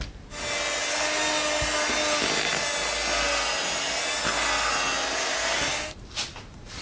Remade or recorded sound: recorded